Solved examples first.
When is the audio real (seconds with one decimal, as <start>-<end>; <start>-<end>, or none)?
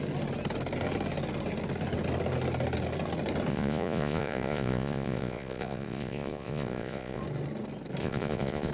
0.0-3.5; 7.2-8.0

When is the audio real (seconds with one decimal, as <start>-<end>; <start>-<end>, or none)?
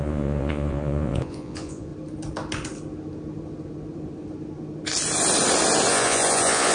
1.9-5.9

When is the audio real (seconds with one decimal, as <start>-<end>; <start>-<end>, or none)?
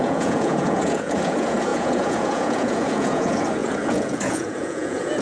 none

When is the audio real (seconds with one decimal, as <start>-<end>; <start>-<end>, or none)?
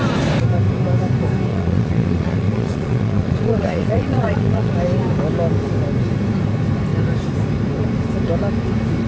0.0-1.5; 4.7-9.1